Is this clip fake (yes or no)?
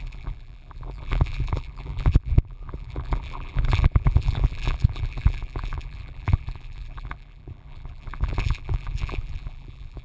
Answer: yes